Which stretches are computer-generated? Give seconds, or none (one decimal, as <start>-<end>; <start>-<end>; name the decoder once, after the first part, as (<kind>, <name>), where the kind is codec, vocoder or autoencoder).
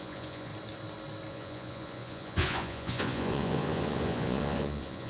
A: 0.0-0.5 (vocoder, Vocos); 1.3-5.1